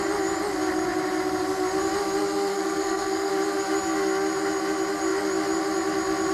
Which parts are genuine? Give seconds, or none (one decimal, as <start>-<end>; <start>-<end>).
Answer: 0.0-2.5; 3.3-6.3